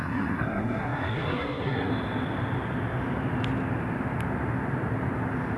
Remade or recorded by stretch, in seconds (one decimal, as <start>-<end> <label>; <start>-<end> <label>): 0.0-1.9 remade; 1.9-5.6 recorded